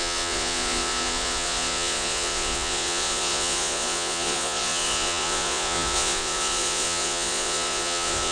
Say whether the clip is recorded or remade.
remade